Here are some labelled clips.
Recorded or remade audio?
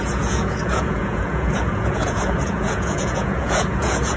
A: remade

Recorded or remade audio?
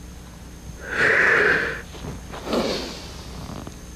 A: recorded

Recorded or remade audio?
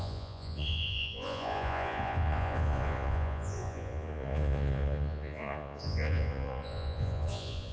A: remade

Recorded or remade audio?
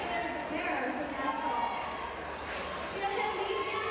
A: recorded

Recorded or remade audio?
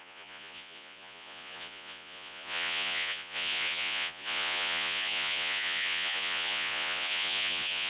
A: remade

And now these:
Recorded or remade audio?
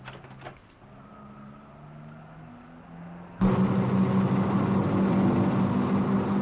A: recorded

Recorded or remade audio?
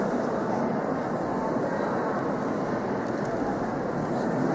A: recorded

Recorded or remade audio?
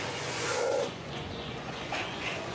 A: remade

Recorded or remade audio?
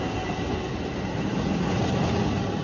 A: recorded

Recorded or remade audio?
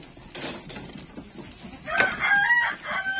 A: recorded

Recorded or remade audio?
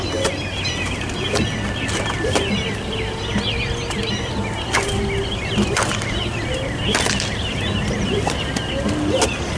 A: recorded